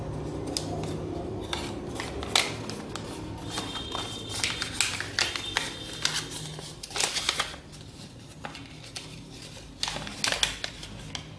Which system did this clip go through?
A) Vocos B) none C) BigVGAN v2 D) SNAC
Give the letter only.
B